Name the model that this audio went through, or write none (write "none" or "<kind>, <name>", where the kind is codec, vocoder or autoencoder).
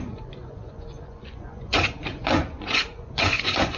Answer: vocoder, Vocos